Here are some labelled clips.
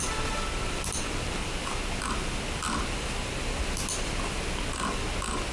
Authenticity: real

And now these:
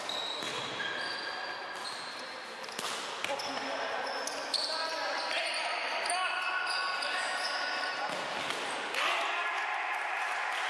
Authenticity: real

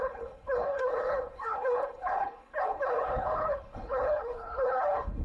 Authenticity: fake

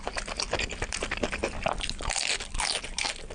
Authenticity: real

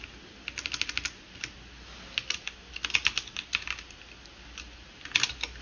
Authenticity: real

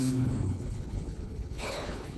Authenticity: fake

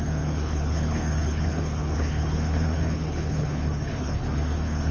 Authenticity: fake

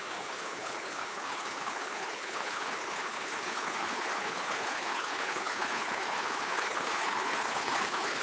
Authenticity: fake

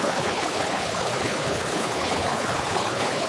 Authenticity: fake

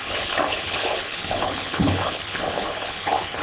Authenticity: fake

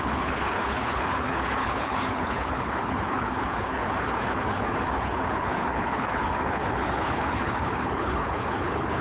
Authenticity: fake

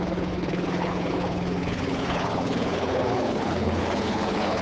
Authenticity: fake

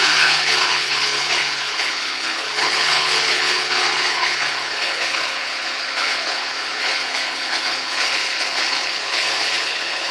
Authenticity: fake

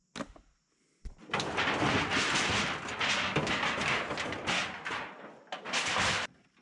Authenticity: real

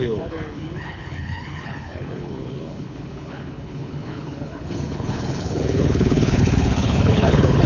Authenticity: fake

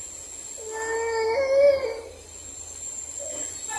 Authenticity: real